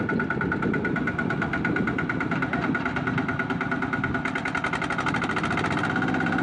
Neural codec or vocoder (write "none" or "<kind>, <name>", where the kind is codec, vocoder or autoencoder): none